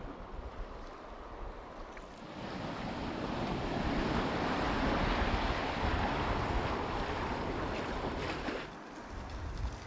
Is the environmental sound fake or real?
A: real